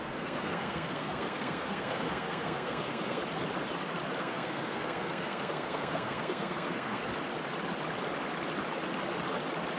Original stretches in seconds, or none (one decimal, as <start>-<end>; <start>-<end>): 3.2-4.2; 7.0-9.8